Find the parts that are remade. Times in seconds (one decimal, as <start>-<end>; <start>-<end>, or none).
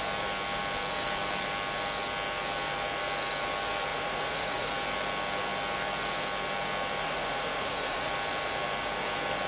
3.9-4.7; 7.0-8.1